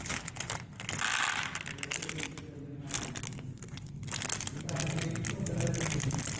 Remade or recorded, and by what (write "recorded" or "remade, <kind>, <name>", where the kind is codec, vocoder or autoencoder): recorded